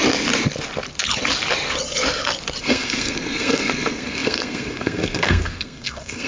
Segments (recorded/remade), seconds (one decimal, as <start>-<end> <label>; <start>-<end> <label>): 0.0-2.6 recorded; 2.6-6.3 remade